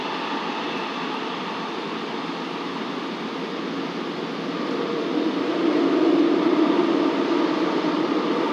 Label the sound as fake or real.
real